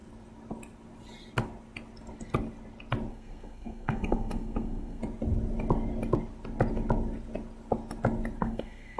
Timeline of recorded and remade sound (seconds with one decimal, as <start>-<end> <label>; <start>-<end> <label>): 0.0-3.1 recorded; 3.1-5.0 remade; 5.0-8.4 recorded; 8.4-9.0 remade